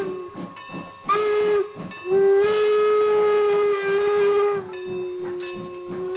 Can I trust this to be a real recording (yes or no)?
yes